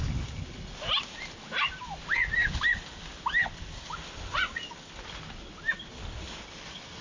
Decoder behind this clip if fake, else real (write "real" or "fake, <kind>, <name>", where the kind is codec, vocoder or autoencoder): real